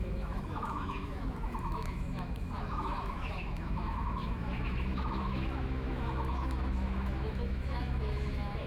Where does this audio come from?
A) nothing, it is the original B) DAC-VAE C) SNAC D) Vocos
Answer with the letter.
B